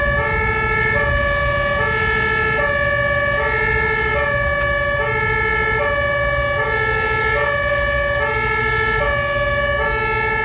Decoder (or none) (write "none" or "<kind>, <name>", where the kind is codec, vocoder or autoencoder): none